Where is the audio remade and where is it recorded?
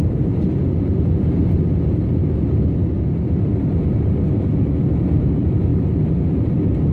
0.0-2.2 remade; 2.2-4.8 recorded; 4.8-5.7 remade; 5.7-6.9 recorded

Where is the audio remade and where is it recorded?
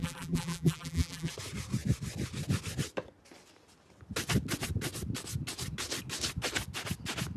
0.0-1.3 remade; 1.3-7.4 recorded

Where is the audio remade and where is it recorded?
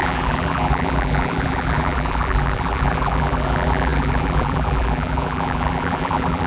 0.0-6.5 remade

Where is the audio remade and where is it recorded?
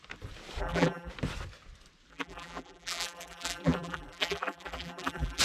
0.0-0.6 recorded; 0.6-1.1 remade; 1.1-2.1 recorded; 2.1-5.4 remade